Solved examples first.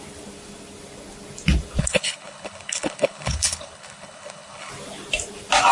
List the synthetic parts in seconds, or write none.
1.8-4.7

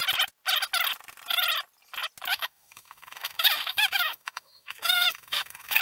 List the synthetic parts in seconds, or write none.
2.3-5.8

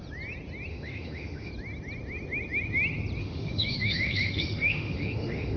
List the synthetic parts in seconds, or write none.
0.7-1.5; 3.2-5.6

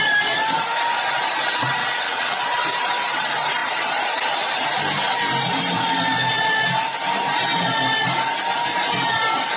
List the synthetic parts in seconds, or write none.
1.8-2.4

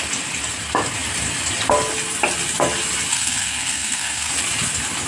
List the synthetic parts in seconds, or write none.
3.1-4.3